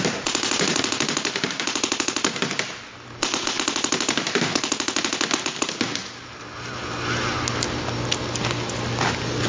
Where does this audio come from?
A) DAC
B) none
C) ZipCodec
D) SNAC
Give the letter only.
B